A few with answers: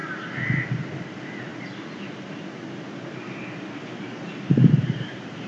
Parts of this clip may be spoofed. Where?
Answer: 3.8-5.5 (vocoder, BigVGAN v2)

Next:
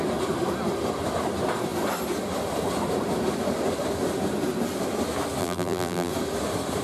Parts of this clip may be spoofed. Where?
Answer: 5.4-6.1 (vocoder, BigVGAN v2)

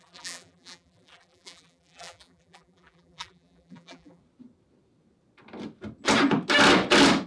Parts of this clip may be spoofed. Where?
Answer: 0.0-4.2 (vocoder, BigVGAN v2)

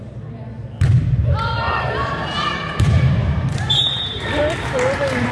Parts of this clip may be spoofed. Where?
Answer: 1.2-4.4 (vocoder, BigVGAN v2)